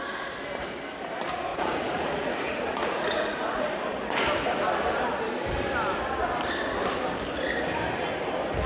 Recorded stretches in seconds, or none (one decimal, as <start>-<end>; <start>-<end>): 0.0-1.5; 3.7-8.7